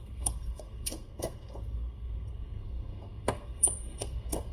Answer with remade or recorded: remade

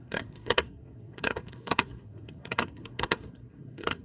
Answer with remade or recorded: remade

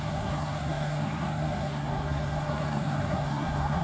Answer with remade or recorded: remade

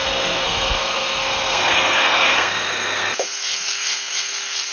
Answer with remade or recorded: remade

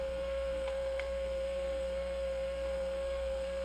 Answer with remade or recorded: remade